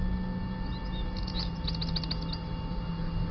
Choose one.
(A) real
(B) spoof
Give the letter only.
A